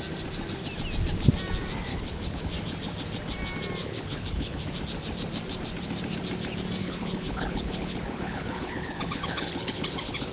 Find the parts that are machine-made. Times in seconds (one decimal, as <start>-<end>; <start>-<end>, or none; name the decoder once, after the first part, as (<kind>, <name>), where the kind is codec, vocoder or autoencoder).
1.9-2.4 (codec, HILCodec); 3.8-4.7; 6.8-10.3